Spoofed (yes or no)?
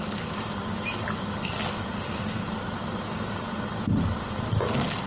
no